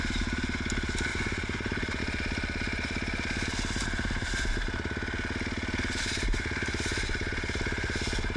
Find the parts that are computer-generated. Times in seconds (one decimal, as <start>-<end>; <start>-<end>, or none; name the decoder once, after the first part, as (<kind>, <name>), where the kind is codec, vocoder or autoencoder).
1.1-2.0 (vocoder, Vocos)